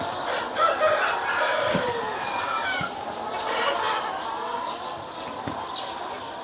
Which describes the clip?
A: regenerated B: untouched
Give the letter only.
B